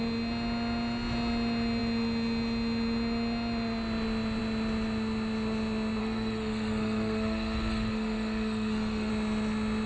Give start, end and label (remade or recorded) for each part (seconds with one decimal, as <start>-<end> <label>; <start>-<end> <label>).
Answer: 0.0-6.0 recorded; 6.0-9.1 remade; 9.1-9.9 recorded